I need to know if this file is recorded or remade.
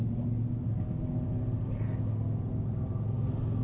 recorded